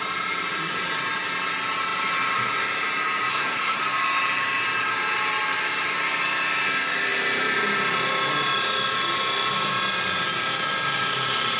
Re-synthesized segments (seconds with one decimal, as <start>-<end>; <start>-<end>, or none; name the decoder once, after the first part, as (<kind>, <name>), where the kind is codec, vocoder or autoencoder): 3.3-3.8 (codec, SNAC)

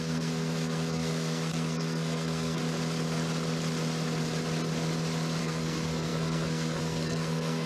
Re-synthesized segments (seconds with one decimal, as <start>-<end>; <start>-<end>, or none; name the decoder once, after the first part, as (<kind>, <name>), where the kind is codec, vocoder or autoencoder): 0.0-2.6 (codec, SNAC); 5.4-7.7

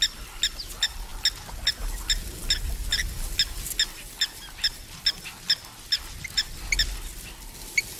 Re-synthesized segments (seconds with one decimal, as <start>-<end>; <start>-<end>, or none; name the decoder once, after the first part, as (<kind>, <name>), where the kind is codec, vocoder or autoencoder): none

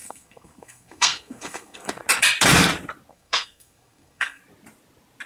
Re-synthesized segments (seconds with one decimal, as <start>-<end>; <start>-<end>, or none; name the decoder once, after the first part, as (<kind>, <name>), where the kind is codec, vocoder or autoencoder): 0.0-1.9 (codec, SNAC); 3.1-4.4

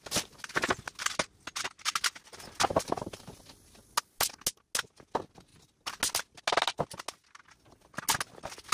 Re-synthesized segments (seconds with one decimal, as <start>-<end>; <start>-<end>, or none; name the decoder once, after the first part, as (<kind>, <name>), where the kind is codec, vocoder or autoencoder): none

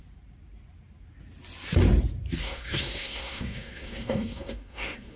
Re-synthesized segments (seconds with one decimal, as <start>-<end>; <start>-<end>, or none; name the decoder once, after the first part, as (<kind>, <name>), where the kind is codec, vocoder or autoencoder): 2.4-5.2 (codec, SNAC)

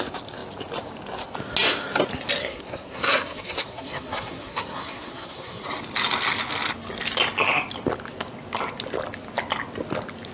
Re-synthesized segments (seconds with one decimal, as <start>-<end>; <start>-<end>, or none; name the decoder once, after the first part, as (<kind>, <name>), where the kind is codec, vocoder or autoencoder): 2.4-5.6 (codec, SNAC)

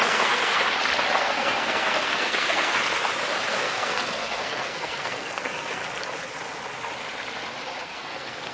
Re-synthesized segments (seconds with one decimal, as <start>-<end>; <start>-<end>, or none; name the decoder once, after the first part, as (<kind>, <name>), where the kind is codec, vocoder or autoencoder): 0.0-0.6 (codec, SNAC); 1.2-2.8; 3.5-5.8; 7.8-8.5